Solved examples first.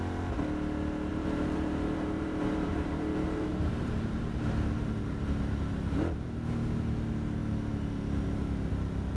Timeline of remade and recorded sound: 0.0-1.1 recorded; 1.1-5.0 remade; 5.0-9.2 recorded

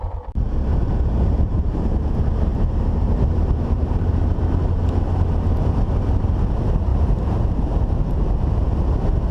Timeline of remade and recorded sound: 0.0-0.7 recorded; 0.7-2.1 remade; 2.1-2.5 recorded; 2.5-4.4 remade; 4.4-6.9 recorded; 6.9-8.1 remade; 8.1-9.3 recorded